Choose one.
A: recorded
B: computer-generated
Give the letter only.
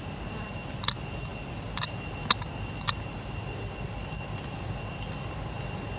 A